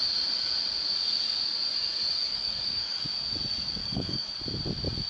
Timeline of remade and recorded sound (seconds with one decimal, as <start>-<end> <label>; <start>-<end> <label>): 0.0-2.2 recorded; 2.2-3.0 remade; 3.0-3.8 recorded; 3.8-4.4 remade; 4.4-5.1 recorded